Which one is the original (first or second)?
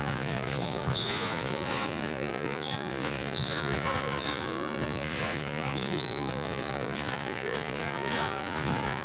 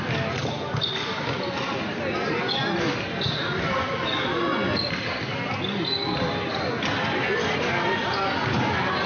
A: second